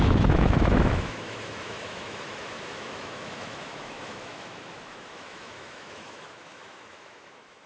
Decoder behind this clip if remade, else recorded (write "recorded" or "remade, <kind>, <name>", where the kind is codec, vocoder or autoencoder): remade, autoencoder, DAC-VAE